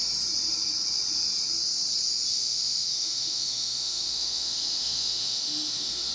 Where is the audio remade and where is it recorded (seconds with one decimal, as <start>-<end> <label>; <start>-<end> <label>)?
0.0-2.3 recorded; 2.3-6.1 remade